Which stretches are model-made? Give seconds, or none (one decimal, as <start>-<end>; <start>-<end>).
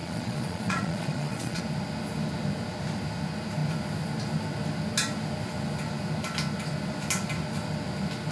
0.0-1.6